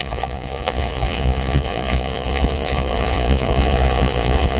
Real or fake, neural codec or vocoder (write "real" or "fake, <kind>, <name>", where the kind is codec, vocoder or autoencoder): fake, vocoder, Vocos